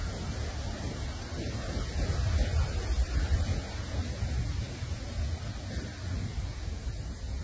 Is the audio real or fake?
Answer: real